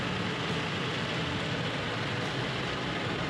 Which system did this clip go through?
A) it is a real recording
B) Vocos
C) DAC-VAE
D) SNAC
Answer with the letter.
A